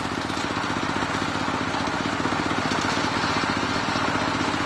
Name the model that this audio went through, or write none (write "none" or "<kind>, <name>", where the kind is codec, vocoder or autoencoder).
none